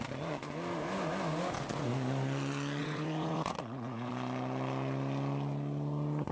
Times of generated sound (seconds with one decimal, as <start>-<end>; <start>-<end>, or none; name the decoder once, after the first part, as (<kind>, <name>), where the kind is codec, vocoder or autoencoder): 2.8-4.1 (vocoder, Vocos)